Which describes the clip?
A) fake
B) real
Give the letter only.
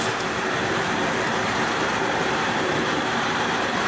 A